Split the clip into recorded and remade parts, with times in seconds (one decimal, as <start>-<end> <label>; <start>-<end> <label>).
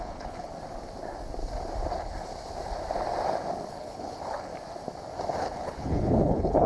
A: 0.0-0.5 remade; 0.5-3.7 recorded; 3.7-4.5 remade; 4.5-5.4 recorded; 5.4-6.7 remade